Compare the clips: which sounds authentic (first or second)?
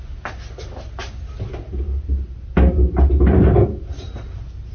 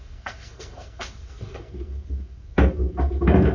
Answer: first